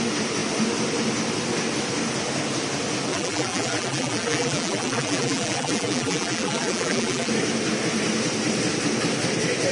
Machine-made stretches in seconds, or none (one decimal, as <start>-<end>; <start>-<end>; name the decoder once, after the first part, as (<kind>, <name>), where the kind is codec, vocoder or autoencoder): 3.1-7.3 (vocoder, BigVGAN v2)